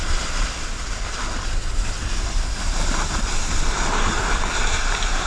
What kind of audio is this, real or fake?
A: real